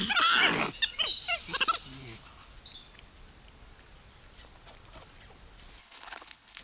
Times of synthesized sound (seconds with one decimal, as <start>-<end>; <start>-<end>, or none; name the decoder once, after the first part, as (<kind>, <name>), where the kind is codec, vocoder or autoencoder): 5.8-6.6 (codec, HILCodec)